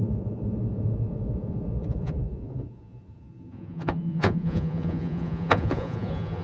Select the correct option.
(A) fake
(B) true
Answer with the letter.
A